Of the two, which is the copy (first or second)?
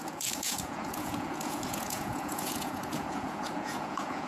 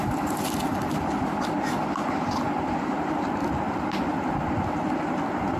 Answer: first